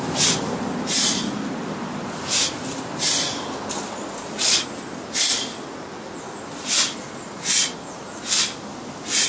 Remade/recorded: recorded